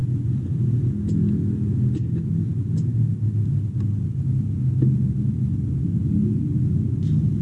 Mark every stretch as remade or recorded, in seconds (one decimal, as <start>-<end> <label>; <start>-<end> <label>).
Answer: 0.0-0.9 remade; 0.9-7.4 recorded